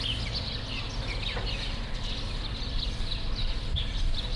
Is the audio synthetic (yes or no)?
no